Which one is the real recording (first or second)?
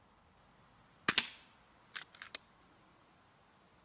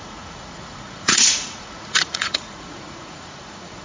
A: first